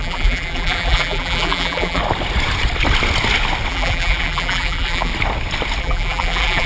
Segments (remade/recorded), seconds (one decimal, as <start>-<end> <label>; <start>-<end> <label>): 0.0-2.0 remade; 2.0-3.7 recorded; 3.7-5.1 remade; 5.1-5.8 recorded; 5.8-6.7 remade